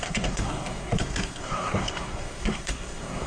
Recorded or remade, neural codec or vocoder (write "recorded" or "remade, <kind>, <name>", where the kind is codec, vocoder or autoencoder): remade, codec, SNAC